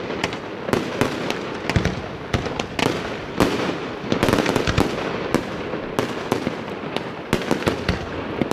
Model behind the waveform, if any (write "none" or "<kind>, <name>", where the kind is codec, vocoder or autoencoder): none